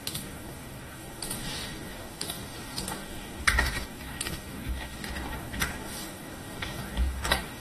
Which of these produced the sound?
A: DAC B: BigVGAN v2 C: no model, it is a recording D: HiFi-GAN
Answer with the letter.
A